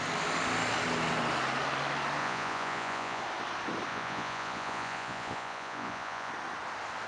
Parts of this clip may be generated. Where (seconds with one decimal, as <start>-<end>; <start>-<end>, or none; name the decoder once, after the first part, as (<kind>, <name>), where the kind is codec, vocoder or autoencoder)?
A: 2.2-3.2 (vocoder, Vocos); 3.9-6.3